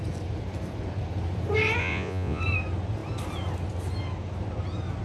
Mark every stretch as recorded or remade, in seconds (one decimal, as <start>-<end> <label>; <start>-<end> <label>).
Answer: 0.0-1.8 recorded; 1.8-2.4 remade; 2.4-5.0 recorded